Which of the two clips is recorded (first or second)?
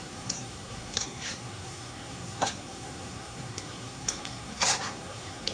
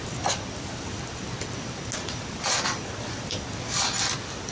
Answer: second